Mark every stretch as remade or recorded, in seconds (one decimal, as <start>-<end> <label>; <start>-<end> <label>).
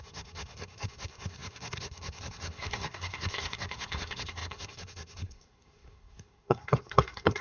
0.0-7.4 remade